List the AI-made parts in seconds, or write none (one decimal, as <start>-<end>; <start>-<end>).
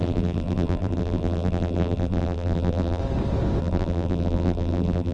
0.0-3.0; 3.6-5.1